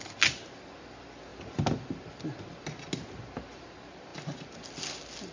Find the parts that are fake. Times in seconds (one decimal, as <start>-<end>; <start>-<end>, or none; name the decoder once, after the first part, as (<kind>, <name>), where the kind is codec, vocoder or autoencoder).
none